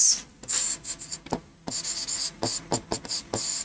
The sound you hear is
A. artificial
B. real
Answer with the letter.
B